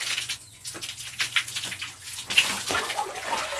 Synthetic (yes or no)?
yes